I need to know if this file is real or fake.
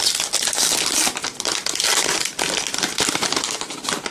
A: real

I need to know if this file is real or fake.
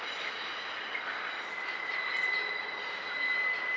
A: real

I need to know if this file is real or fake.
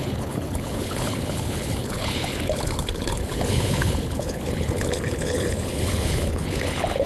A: fake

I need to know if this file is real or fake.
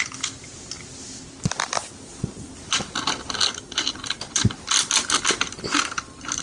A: real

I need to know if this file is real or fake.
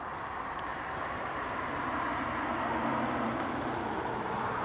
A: real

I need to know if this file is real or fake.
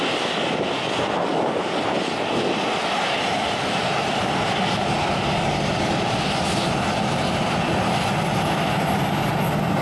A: real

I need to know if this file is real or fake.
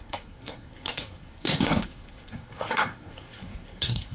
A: fake